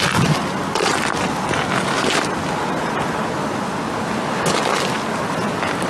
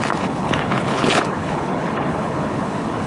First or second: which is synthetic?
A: second